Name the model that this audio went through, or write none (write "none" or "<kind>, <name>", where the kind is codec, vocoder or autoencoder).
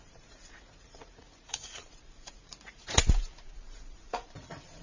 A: vocoder, Vocos